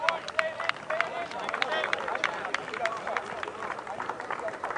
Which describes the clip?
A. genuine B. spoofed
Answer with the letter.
A